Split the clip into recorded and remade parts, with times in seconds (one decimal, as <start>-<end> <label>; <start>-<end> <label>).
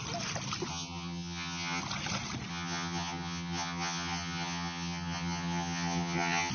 0.0-0.7 recorded; 0.7-1.8 remade; 1.8-2.5 recorded; 2.5-6.5 remade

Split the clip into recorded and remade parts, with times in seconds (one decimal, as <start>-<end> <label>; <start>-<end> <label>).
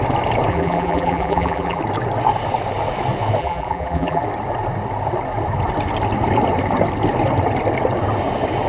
0.0-0.5 recorded; 0.5-1.8 remade; 1.8-3.4 recorded; 3.4-4.2 remade; 4.2-8.7 recorded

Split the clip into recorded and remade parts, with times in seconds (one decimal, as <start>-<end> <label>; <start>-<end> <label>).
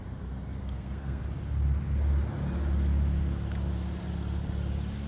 0.0-0.6 recorded; 0.6-1.2 remade; 1.2-5.1 recorded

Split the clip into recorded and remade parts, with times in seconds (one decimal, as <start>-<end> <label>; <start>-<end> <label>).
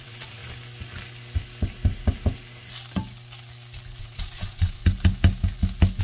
0.0-0.4 remade; 0.4-4.0 recorded; 4.0-4.8 remade; 4.8-6.0 recorded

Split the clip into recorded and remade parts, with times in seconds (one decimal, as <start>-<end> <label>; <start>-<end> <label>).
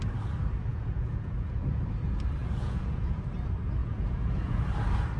0.0-0.7 recorded; 0.7-1.8 remade; 1.8-2.4 recorded; 2.4-3.2 remade; 3.2-3.8 recorded; 3.8-4.6 remade; 4.6-5.2 recorded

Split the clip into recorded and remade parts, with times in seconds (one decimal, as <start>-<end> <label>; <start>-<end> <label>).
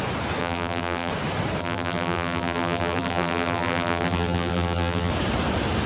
0.0-0.4 recorded; 0.4-1.1 remade; 1.1-1.6 recorded; 1.6-5.1 remade; 5.1-5.9 recorded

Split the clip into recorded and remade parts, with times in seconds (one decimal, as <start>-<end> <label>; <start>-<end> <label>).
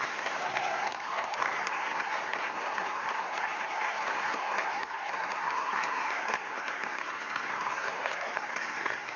0.0-9.2 remade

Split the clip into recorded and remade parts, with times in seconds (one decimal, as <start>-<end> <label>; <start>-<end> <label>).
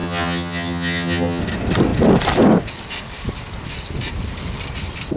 0.0-1.4 remade; 1.4-5.2 recorded